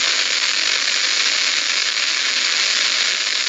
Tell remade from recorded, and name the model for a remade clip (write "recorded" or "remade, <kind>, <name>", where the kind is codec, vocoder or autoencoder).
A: recorded